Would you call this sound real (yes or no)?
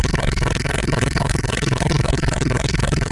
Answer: no